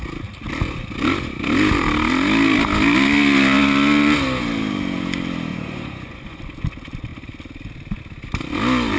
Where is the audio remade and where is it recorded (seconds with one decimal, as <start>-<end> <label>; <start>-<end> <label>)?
0.0-5.5 recorded; 5.5-6.4 remade; 6.4-9.0 recorded